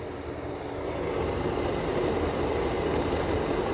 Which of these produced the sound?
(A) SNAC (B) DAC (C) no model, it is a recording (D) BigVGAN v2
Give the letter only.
C